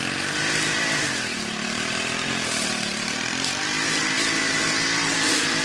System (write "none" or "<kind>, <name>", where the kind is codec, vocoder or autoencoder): vocoder, BigVGAN v2